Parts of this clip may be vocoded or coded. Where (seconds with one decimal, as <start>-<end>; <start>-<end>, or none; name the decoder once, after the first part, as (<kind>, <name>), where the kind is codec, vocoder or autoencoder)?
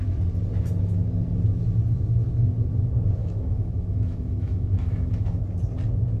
3.2-5.4 (autoencoder, DAC-VAE)